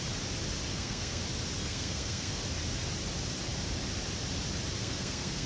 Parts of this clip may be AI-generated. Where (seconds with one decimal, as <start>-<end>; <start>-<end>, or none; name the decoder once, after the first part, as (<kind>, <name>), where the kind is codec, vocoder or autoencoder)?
0.7-1.2 (codec, SNAC); 1.6-2.3; 4.8-5.5